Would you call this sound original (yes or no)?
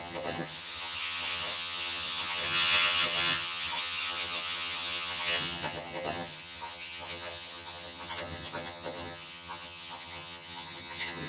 no